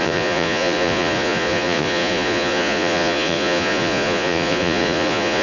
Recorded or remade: remade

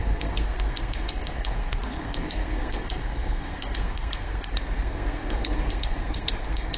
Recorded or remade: remade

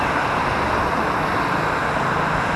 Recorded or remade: recorded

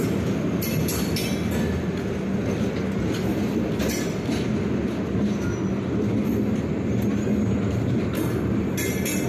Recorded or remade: recorded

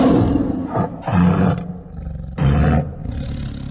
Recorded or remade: recorded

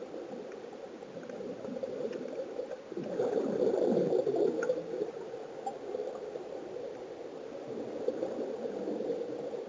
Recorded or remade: recorded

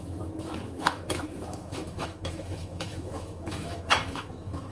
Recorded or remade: remade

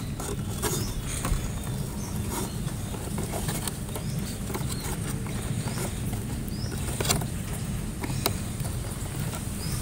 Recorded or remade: recorded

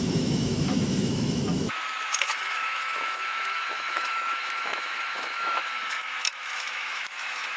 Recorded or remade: remade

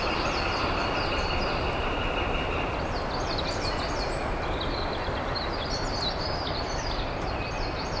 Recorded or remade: recorded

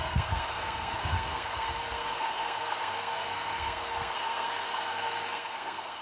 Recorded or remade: remade